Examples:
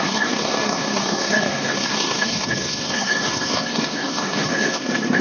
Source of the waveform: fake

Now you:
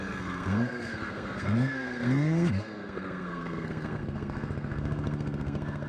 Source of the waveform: fake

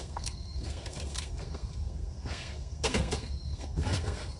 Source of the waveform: fake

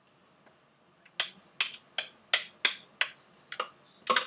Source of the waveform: real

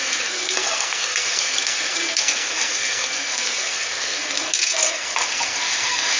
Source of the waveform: fake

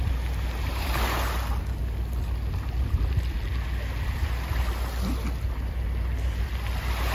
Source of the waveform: real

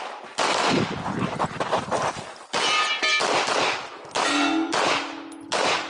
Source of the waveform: real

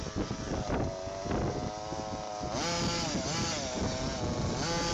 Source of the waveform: real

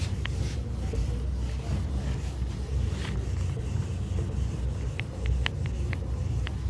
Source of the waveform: real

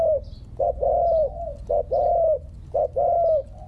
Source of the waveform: real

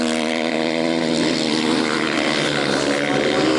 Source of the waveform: real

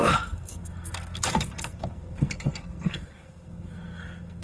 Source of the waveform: fake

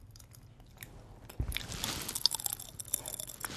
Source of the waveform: real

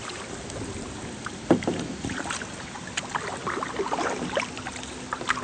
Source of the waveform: real